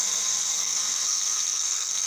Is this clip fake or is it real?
fake